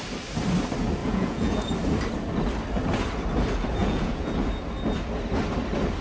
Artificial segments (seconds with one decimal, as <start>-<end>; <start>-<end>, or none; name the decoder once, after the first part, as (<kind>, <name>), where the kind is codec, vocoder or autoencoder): 1.0-1.7 (vocoder, Vocos); 3.8-4.4